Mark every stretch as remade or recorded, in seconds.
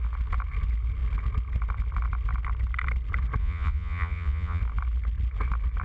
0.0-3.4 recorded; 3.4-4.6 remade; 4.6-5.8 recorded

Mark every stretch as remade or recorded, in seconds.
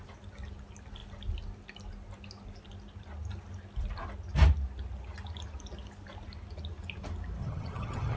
0.0-7.4 recorded; 7.4-8.2 remade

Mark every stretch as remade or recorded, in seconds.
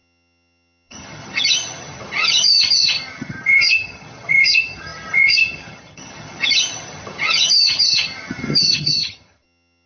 0.0-9.9 remade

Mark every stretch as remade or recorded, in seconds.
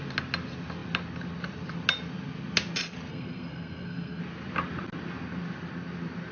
0.0-3.1 recorded; 3.1-4.2 remade; 4.2-6.3 recorded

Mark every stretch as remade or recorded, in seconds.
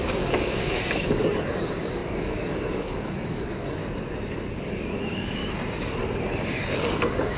0.0-3.8 remade; 3.8-4.5 recorded; 4.5-5.4 remade; 5.4-6.9 recorded; 6.9-7.4 remade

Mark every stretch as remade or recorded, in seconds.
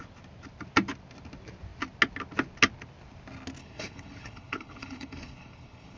0.0-3.6 recorded; 3.6-6.0 remade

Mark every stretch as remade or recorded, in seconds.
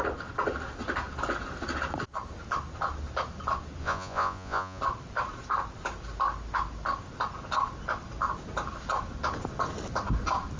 0.0-3.8 recorded; 3.8-4.8 remade; 4.8-10.6 recorded